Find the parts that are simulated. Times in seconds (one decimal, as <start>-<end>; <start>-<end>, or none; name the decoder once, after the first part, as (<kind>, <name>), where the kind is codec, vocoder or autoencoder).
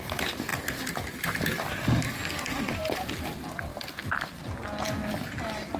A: none